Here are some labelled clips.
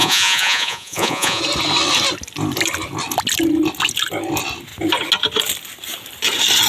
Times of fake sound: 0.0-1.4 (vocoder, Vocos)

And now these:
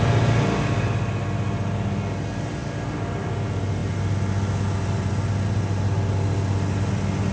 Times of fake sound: none

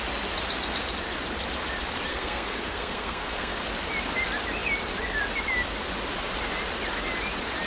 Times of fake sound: 2.1-3.6 (codec, SNAC)

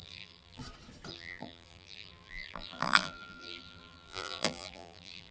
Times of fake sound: 0.0-0.6 (vocoder, BigVGAN v2); 1.1-5.3

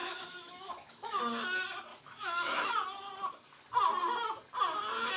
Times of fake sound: 0.0-1.2 (autoencoder, DAC-VAE); 1.9-2.7

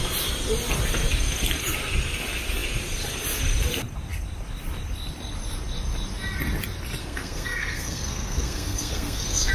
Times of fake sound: 7.0-9.5 (codec, SNAC)

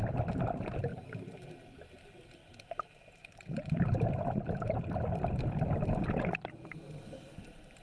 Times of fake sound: 0.9-1.4 (vocoder, BigVGAN v2)